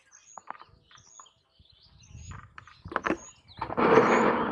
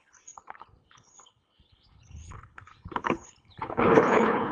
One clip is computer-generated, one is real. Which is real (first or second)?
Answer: first